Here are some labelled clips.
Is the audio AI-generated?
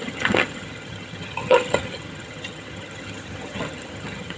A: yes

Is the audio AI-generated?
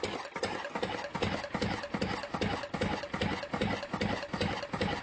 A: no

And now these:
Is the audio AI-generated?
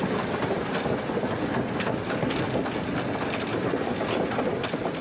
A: no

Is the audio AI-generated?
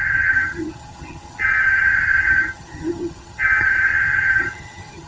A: yes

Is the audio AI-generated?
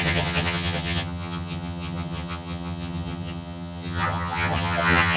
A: yes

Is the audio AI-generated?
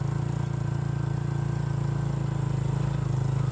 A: no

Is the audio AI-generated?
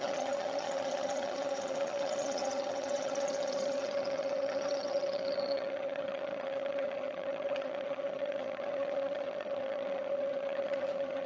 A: yes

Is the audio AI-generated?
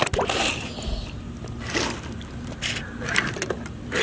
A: no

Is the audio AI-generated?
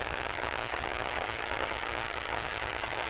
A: yes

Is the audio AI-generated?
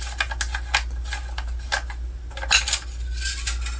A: no